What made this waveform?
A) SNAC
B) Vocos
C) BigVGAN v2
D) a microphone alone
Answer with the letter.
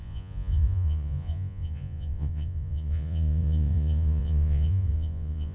B